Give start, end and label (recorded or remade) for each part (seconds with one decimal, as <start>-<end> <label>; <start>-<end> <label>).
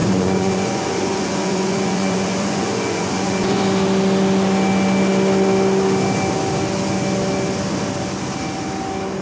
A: 0.0-3.6 remade; 3.6-9.2 recorded